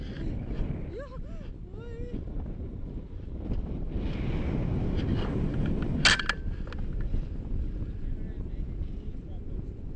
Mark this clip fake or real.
real